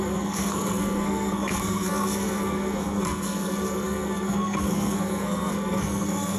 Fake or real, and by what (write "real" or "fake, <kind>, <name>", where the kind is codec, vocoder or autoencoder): fake, codec, SNAC